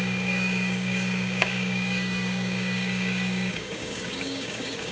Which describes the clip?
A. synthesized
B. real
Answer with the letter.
A